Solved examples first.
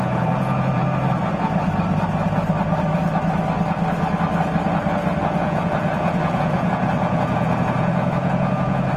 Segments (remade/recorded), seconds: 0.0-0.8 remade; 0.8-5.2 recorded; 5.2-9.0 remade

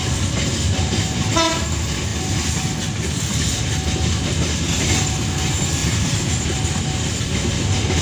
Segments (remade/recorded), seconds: 0.0-5.8 recorded; 5.8-6.4 remade; 6.4-8.0 recorded

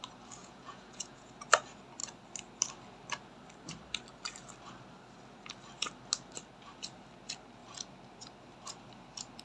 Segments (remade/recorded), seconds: 0.0-0.4 recorded; 0.4-1.3 remade; 1.3-9.4 recorded

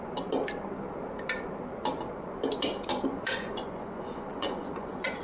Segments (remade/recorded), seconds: 0.0-3.1 recorded; 3.1-5.2 remade

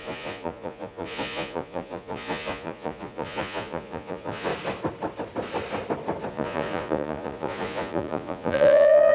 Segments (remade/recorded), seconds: 0.0-4.5 remade; 4.5-6.3 recorded; 6.3-9.1 remade

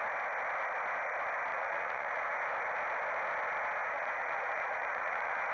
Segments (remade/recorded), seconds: 0.0-1.5 recorded; 1.5-2.5 remade; 2.5-3.8 recorded; 3.8-5.5 remade